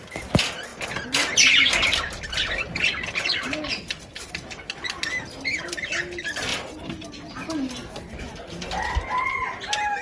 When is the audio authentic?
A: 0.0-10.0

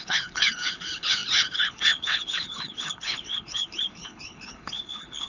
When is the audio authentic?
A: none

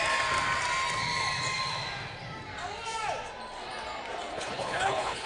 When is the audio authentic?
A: 0.0-4.3

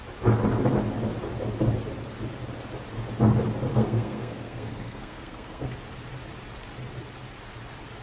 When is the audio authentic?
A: 0.0-3.7; 5.7-8.0

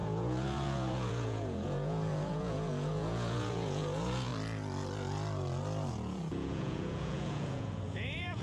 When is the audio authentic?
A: 4.3-5.9

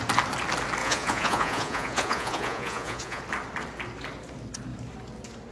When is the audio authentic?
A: 0.0-0.8; 3.2-5.5

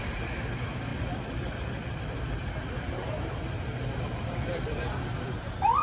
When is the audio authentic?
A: 0.9-2.0

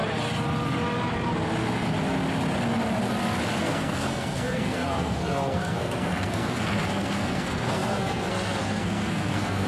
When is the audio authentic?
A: 0.0-3.6